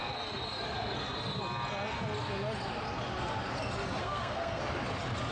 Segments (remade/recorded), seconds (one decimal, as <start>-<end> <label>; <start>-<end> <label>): 0.0-4.0 recorded; 4.0-4.6 remade; 4.6-5.3 recorded